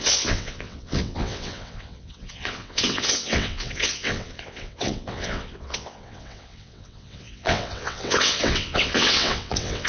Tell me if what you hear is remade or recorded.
remade